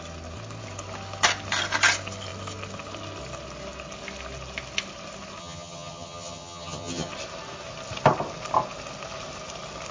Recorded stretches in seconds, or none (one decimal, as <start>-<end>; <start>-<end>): 0.0-5.4; 7.1-9.9

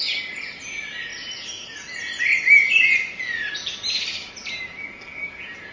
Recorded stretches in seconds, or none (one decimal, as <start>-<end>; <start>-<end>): 0.0-5.7